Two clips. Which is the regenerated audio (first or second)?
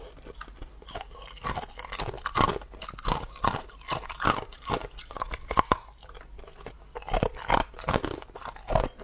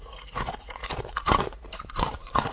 second